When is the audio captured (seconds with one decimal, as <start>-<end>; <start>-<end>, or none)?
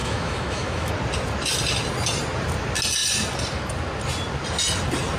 0.9-5.2